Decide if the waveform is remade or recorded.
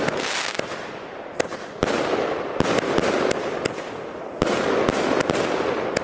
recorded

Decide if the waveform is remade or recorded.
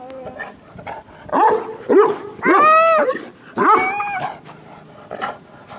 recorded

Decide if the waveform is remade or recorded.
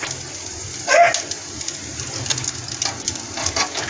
recorded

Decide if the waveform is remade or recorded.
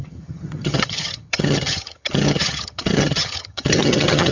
remade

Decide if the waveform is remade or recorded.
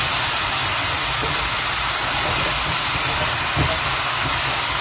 recorded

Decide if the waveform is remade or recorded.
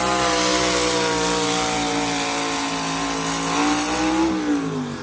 recorded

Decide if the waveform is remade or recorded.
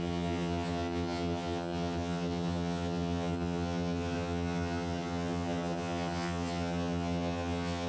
remade